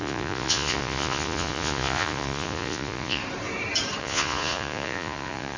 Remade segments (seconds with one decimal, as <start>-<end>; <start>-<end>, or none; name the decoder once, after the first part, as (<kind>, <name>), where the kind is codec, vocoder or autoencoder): 0.0-3.2 (vocoder, Vocos); 4.0-5.6